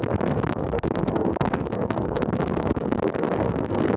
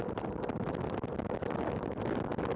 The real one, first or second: second